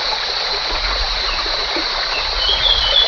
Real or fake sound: fake